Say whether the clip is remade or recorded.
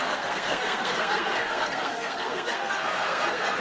remade